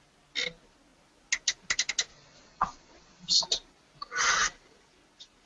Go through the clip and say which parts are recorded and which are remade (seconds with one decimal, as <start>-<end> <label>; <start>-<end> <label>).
0.0-2.1 recorded; 2.1-3.4 remade; 3.4-5.5 recorded